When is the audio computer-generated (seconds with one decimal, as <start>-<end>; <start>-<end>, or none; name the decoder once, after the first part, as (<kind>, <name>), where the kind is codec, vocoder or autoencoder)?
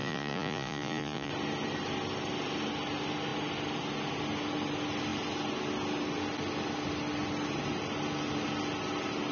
0.0-1.3 (vocoder, Vocos)